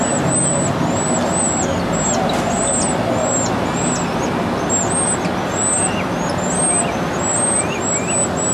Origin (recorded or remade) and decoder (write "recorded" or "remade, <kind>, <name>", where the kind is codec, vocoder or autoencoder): recorded